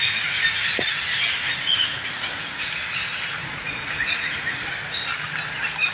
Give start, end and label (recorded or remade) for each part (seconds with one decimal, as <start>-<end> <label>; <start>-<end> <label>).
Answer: 0.0-1.4 recorded; 1.4-2.7 remade; 2.7-3.4 recorded; 3.4-4.7 remade; 4.7-5.9 recorded